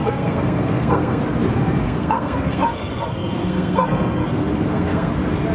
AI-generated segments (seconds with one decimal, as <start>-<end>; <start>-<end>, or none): 0.0-1.2; 1.8-5.1